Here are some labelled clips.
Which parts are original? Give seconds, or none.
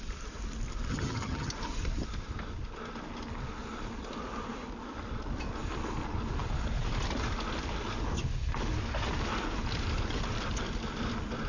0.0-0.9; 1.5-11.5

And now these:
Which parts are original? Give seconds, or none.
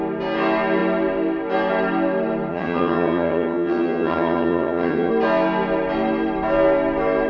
0.0-2.5; 5.1-7.3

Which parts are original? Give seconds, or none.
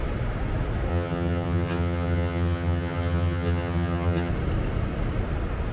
0.0-0.9; 4.3-5.7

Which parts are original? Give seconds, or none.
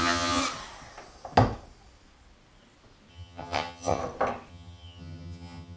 0.4-3.1; 4.0-4.5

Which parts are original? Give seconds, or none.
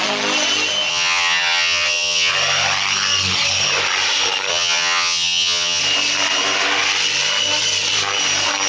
0.0-0.9; 2.3-4.5; 5.8-8.7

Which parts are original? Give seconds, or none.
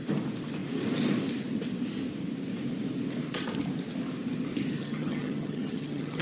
0.0-4.8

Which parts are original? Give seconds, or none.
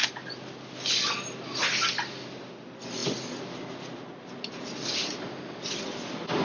0.0-6.4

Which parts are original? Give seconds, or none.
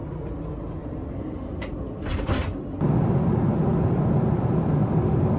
0.0-5.4